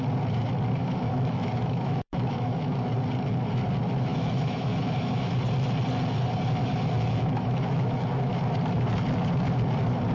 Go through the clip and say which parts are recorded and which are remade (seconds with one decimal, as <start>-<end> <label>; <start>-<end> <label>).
0.0-0.8 recorded; 0.8-2.9 remade; 2.9-4.1 recorded; 4.1-5.3 remade; 5.3-6.6 recorded; 6.6-8.4 remade; 8.4-10.1 recorded